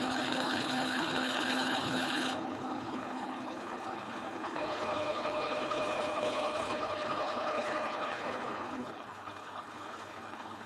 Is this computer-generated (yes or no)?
yes